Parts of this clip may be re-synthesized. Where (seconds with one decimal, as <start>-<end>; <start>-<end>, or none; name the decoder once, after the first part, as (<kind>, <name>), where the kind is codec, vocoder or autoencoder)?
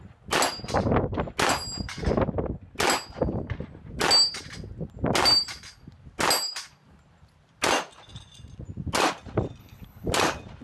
9.6-10.1 (codec, HILCodec)